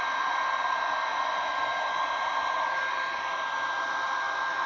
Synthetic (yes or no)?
no